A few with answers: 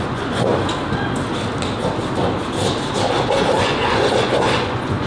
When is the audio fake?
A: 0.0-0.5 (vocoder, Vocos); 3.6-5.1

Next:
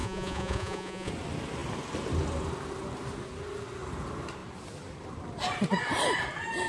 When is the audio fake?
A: 0.0-1.1 (vocoder, Vocos)